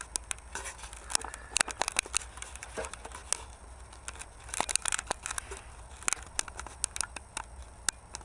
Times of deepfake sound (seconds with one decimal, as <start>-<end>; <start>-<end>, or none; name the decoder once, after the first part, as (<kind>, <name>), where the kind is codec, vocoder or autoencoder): none